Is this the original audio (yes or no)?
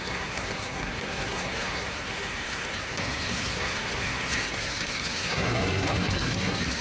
no